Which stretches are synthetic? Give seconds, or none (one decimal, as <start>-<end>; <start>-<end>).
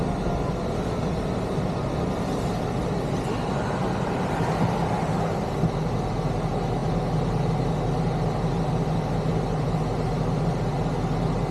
none